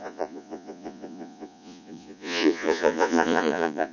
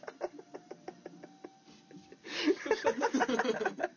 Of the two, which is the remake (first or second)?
first